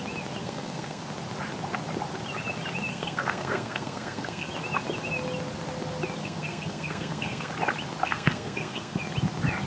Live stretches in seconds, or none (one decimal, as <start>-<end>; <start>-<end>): 0.0-0.4; 1.0-2.9; 4.5-6.2; 7.5-8.0; 9.0-9.7